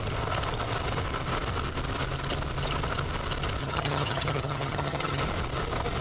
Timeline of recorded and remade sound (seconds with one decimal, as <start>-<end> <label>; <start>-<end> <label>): 0.0-3.6 recorded; 3.6-5.2 remade; 5.2-6.0 recorded